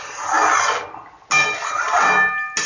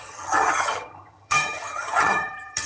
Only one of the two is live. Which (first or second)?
first